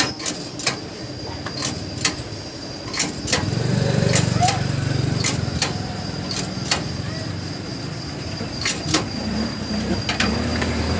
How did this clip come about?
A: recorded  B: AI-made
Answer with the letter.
A